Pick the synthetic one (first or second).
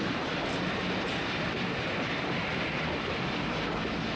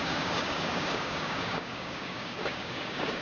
second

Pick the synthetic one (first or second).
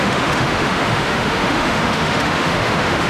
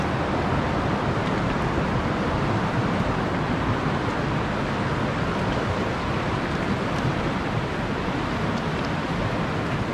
first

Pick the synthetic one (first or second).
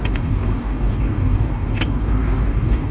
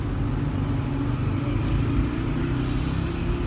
first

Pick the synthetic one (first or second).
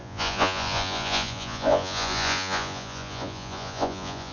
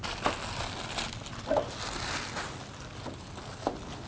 first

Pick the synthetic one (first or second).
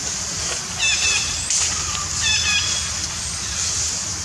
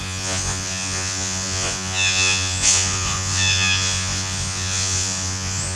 second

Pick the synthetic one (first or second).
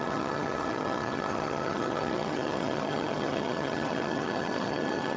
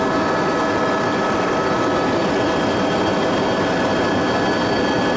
first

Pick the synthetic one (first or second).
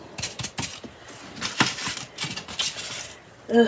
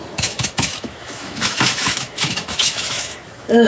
second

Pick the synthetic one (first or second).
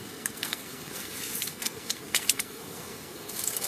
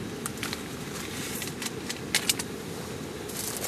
first